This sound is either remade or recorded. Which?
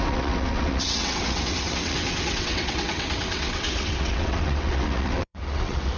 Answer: remade